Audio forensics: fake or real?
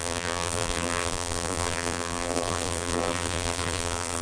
fake